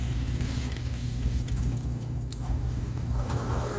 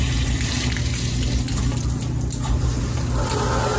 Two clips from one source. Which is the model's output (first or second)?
first